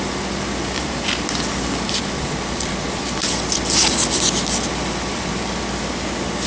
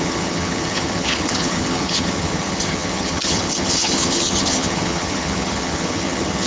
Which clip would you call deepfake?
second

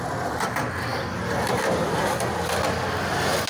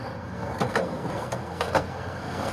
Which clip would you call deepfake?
second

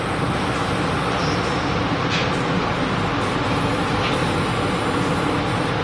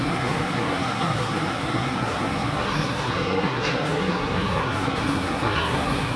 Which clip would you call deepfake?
second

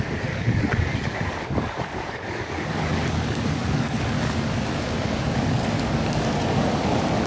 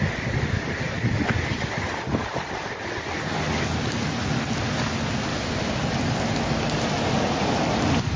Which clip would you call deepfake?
first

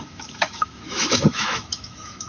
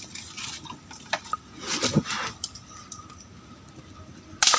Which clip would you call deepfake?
first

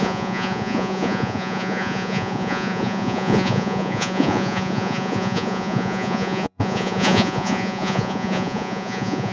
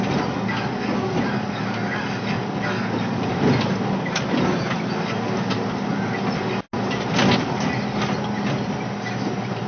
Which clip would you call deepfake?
first